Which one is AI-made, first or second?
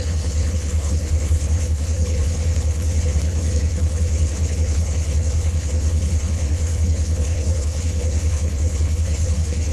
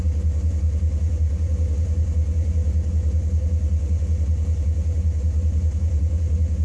first